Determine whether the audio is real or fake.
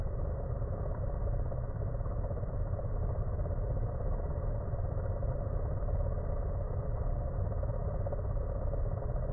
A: real